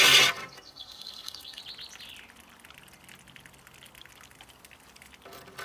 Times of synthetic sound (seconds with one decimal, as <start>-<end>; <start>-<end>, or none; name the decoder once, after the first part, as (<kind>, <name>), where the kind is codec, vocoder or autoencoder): 0.4-1.6 (codec, SNAC)